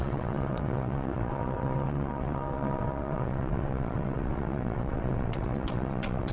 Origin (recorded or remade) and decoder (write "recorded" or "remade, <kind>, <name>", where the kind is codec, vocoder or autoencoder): remade, vocoder, WaveNeXt